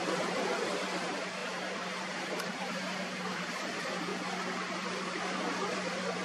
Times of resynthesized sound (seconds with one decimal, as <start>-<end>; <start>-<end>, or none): 0.0-4.1; 4.9-6.2